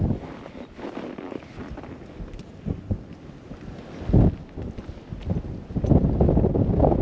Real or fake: real